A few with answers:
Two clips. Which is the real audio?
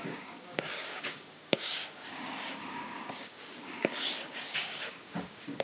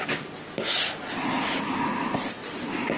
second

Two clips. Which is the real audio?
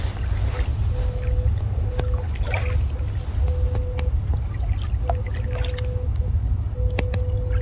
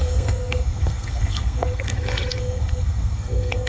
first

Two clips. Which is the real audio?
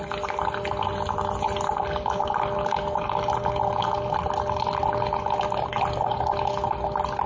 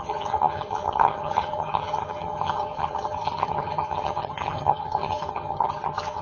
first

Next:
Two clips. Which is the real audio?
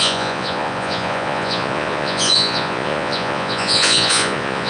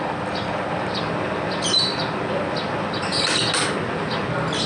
second